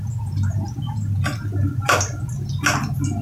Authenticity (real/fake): real